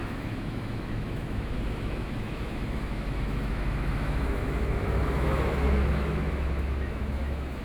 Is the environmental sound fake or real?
fake